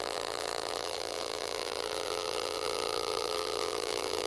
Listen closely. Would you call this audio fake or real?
fake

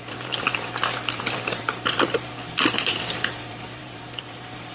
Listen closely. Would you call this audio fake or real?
fake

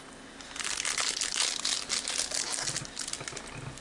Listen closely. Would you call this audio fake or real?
real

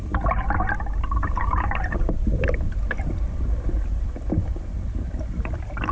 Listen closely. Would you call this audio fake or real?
fake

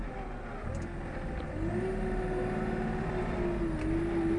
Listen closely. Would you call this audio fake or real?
real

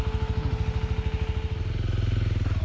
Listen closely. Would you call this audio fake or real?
real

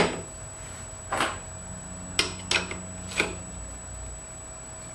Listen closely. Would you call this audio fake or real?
real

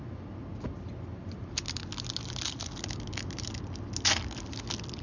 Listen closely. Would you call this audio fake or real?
real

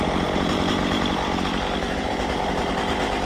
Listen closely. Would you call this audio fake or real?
fake